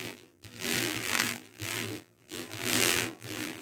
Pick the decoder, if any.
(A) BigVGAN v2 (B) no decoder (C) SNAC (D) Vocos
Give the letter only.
A